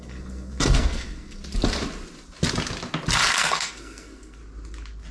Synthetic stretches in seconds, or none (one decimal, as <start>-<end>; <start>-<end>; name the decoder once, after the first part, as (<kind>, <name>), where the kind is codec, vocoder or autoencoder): 0.0-1.4 (codec, SNAC); 3.3-4.4